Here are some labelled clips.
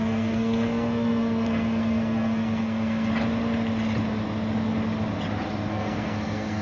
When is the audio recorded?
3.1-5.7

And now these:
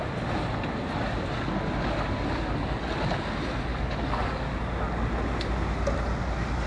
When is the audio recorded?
0.0-3.7; 4.6-6.7

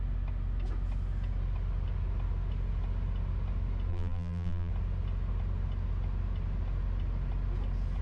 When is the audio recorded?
0.0-3.9; 4.7-8.0

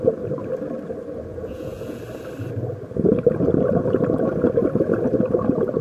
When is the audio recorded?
0.0-1.3; 2.0-5.8

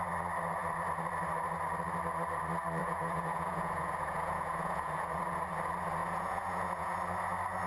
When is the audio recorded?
0.0-2.8; 5.2-6.0; 7.0-7.7

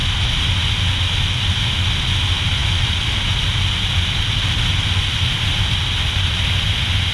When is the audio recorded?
0.0-7.1

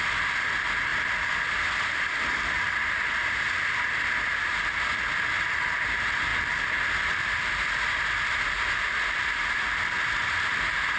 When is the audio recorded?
0.0-11.0